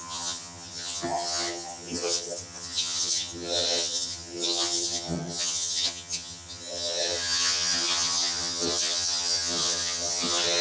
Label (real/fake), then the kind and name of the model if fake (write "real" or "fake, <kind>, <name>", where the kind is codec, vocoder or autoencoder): fake, vocoder, HiFi-GAN